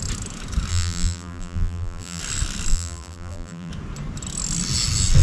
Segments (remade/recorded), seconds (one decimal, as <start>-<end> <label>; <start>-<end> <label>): 0.0-0.7 recorded; 0.7-2.2 remade; 2.2-2.7 recorded; 2.7-3.7 remade; 3.7-5.2 recorded